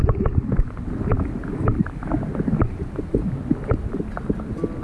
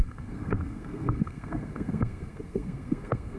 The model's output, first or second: second